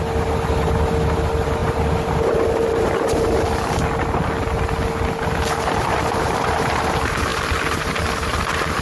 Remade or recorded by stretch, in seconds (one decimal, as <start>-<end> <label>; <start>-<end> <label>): 0.0-5.9 recorded; 5.9-6.8 remade; 6.8-8.8 recorded